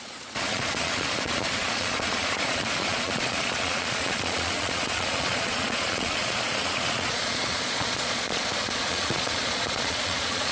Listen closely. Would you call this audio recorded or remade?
remade